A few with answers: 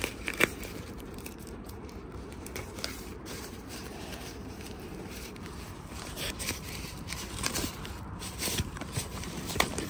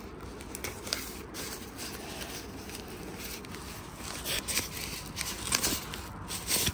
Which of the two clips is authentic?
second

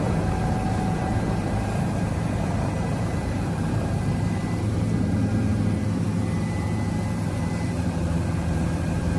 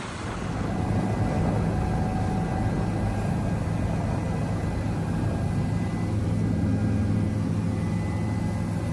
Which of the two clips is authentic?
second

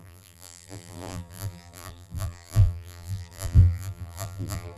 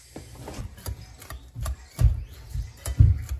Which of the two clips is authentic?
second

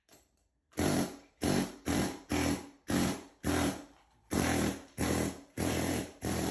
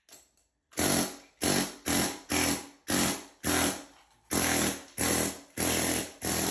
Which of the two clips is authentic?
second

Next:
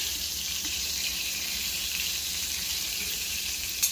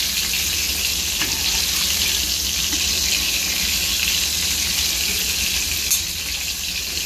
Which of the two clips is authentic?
second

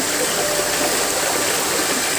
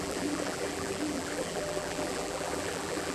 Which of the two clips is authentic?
first